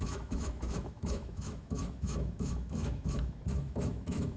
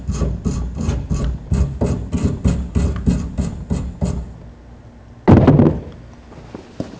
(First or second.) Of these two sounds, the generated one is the first